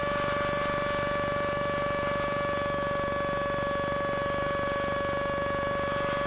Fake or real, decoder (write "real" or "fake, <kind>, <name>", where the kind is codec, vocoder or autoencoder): real